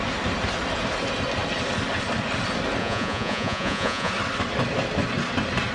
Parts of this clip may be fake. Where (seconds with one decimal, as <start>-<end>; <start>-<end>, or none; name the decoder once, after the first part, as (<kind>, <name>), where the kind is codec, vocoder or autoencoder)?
2.8-4.1 (vocoder, Vocos)